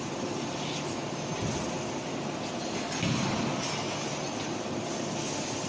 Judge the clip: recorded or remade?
recorded